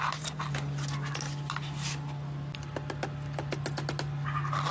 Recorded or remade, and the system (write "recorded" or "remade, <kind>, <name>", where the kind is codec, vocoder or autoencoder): recorded